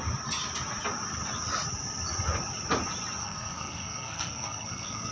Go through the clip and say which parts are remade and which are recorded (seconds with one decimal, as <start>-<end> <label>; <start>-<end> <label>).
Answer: 0.0-3.2 recorded; 3.2-5.1 remade